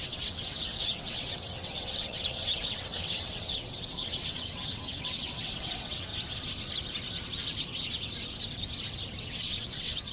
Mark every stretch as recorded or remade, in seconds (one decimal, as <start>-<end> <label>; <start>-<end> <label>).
0.0-6.1 remade; 6.1-9.2 recorded; 9.2-10.1 remade